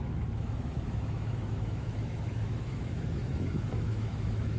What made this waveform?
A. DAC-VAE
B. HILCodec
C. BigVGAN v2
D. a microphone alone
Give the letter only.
A